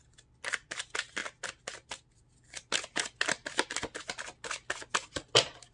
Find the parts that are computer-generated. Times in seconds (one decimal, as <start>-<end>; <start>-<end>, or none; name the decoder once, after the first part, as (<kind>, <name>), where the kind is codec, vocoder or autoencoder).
none